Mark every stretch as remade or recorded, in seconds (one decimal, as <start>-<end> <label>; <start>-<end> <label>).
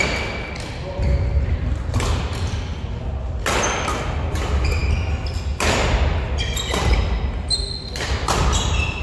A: 0.0-9.0 recorded